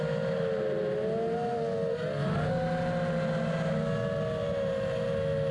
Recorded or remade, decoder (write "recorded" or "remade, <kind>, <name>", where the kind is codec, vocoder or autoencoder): recorded